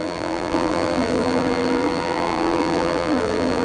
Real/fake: fake